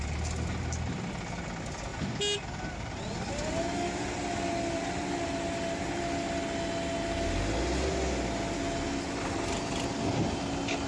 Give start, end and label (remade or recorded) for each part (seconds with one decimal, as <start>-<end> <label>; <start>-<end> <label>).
0.0-10.9 recorded